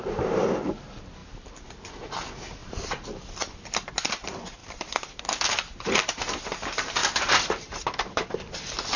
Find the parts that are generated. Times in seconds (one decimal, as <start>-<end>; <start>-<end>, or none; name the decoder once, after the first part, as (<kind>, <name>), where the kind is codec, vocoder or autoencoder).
2.6-3.9 (vocoder, BigVGAN v2); 4.6-5.2; 7.0-9.0